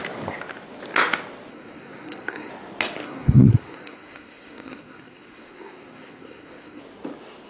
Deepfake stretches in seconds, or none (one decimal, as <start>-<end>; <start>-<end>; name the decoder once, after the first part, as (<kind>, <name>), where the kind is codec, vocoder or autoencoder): 1.5-2.5 (codec, SNAC); 3.0-6.8